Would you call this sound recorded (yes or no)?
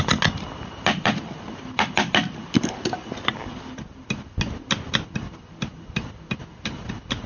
yes